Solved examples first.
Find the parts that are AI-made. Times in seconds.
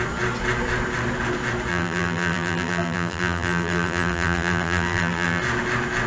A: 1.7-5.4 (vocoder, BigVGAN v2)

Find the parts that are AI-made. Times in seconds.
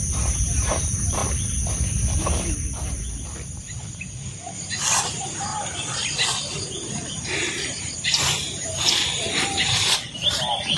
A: 0.0-1.2 (vocoder, BigVGAN v2); 5.0-5.5; 8.2-10.8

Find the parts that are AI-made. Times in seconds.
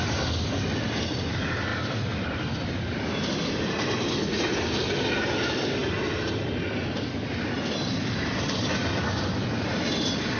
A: none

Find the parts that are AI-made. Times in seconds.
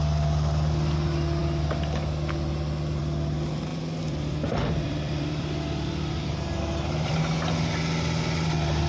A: 3.7-6.1 (vocoder, BigVGAN v2)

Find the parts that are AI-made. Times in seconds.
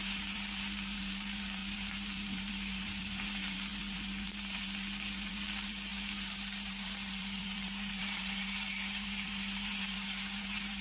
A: 0.0-10.8 (vocoder, BigVGAN v2)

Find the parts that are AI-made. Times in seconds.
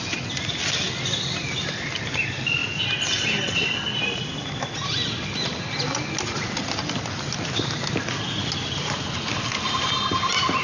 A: none